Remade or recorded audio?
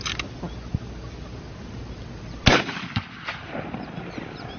recorded